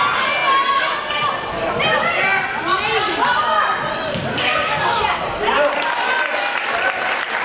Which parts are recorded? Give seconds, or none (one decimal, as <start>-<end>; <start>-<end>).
0.0-4.3; 5.0-7.4